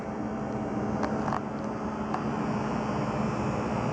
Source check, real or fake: real